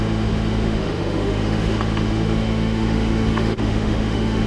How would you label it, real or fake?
fake